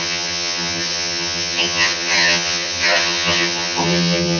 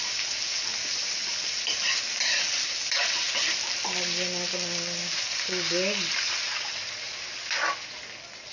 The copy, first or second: first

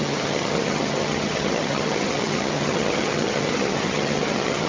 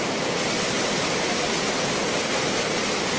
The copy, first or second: first